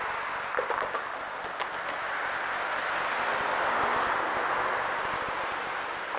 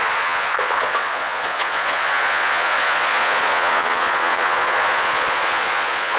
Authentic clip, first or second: first